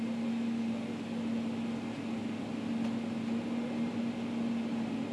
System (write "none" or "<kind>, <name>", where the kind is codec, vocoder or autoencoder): none